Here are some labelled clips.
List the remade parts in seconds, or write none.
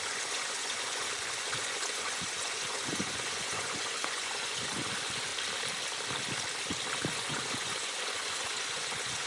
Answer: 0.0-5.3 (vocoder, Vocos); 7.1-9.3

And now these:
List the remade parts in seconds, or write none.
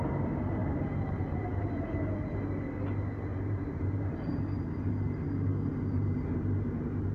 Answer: 0.6-1.9 (vocoder, BigVGAN v2); 3.3-4.4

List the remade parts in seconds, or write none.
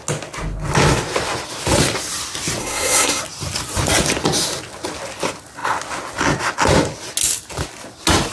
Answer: 2.6-3.2 (codec, SNAC)